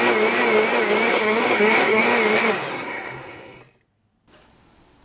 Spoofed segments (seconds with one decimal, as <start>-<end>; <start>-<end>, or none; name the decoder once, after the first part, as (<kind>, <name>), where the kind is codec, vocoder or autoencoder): 1.1-2.0 (codec, SNAC); 2.7-3.6